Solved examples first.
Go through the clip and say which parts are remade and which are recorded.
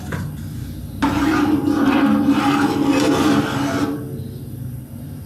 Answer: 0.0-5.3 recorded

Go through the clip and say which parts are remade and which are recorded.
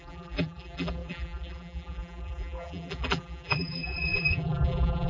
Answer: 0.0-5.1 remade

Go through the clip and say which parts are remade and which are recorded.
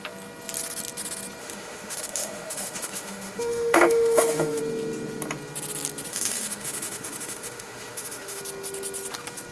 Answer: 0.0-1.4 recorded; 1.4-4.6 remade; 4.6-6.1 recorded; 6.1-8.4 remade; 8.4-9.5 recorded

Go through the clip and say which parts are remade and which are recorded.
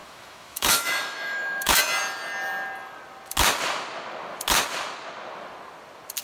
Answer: 0.0-1.8 remade; 1.8-6.2 recorded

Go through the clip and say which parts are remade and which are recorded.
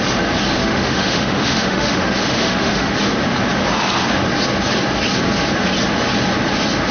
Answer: 0.0-0.6 recorded; 0.6-2.9 remade; 2.9-6.9 recorded